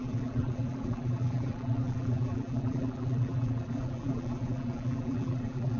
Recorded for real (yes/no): no